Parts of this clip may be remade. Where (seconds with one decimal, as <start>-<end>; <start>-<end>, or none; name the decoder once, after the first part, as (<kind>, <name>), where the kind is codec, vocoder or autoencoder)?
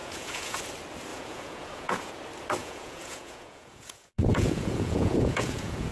0.0-0.6 (vocoder, Vocos); 1.1-2.1; 2.6-5.9